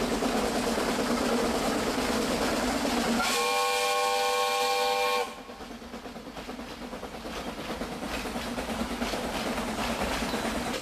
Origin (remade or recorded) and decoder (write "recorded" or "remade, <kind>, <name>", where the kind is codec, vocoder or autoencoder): recorded